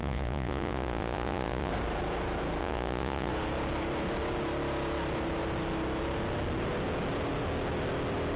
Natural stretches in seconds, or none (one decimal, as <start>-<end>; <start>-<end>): 1.7-2.6; 3.3-8.4